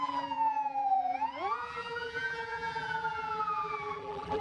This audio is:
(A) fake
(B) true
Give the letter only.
A